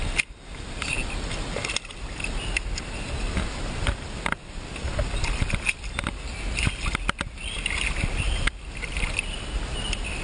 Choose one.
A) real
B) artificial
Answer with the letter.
A